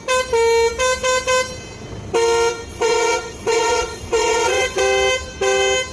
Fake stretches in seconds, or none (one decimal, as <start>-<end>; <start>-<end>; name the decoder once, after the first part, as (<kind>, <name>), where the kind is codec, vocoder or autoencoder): 2.7-4.8 (vocoder, Vocos)